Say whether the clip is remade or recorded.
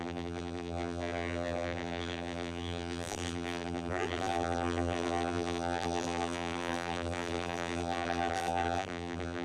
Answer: remade